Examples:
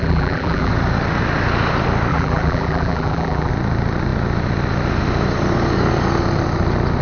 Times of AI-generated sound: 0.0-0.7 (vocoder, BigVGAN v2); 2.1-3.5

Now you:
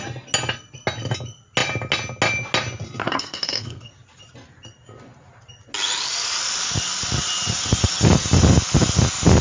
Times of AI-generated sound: 3.0-3.9 (codec, SNAC)

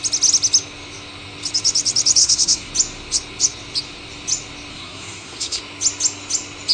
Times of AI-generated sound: 2.2-2.7 (codec, SNAC); 4.7-5.6